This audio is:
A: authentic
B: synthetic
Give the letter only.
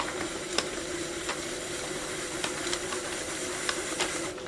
A